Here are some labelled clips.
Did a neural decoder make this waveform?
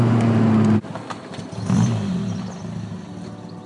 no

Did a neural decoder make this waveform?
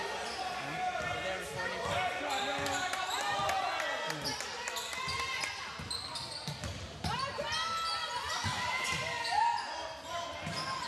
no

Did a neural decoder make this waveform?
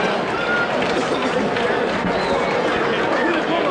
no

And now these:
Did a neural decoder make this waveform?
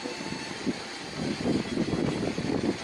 no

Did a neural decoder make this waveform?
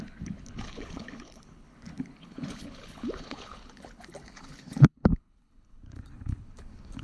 yes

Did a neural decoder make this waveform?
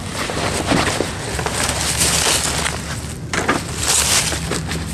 no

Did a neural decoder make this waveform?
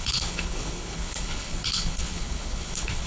yes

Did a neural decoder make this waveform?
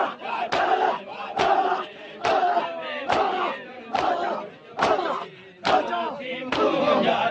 no